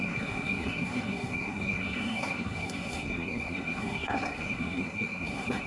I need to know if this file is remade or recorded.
remade